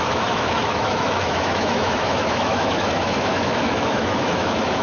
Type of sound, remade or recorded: remade